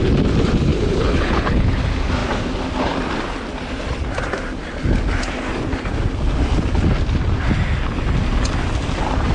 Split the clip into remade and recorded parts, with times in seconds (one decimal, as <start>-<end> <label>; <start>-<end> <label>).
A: 0.0-0.7 recorded; 0.7-1.7 remade; 1.7-9.3 recorded